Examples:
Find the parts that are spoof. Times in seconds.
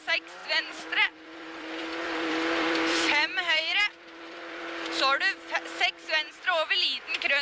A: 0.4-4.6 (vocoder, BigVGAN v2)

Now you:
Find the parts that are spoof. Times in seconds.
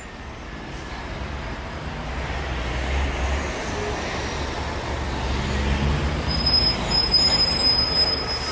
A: none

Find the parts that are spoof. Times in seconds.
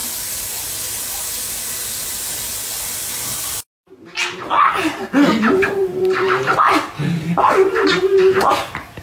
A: 5.8-6.5 (vocoder, BigVGAN v2)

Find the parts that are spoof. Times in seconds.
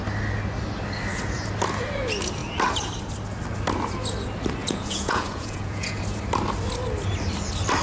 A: 4.6-6.0 (vocoder, Vocos)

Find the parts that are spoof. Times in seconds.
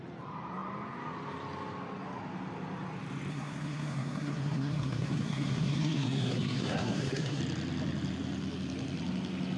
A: 3.3-7.4 (codec, SNAC)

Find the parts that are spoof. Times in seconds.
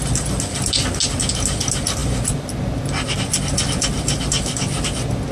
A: none